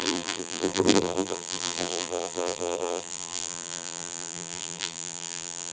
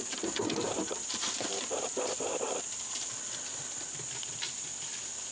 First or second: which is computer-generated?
first